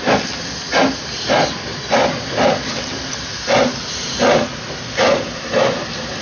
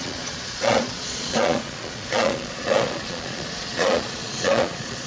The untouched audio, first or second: first